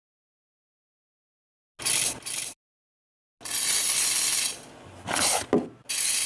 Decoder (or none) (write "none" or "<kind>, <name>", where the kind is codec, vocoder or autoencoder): none